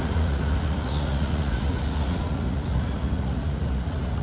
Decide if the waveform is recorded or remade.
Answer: remade